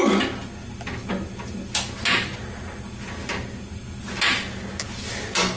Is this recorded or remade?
recorded